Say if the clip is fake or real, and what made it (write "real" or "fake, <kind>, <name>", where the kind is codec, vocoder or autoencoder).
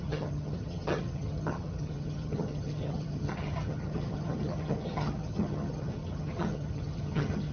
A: fake, vocoder, HiFi-GAN